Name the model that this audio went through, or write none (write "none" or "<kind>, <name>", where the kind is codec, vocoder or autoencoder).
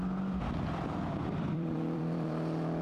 vocoder, BigVGAN v2